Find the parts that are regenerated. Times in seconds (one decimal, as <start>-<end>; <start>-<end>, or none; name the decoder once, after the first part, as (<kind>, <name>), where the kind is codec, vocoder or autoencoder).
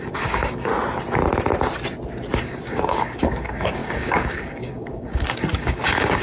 0.0-0.7 (codec, DAC); 2.4-6.2